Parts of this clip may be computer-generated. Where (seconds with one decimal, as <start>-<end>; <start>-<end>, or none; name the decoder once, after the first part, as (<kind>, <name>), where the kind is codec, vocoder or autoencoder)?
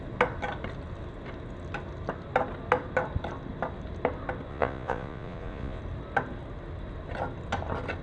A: 4.5-5.8 (vocoder, Vocos)